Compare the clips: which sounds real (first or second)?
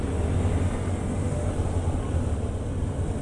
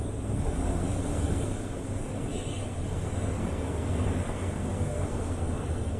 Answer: first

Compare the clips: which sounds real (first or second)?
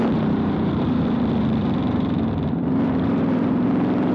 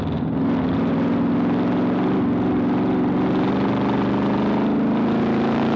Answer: second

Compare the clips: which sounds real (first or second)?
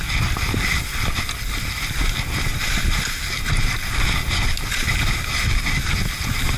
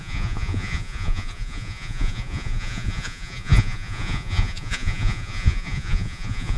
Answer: first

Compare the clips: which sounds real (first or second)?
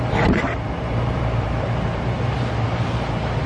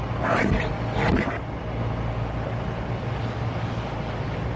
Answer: second